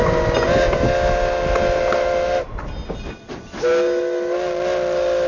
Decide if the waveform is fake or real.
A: real